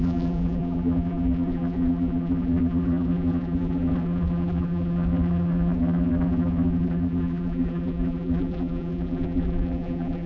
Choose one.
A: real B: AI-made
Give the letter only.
B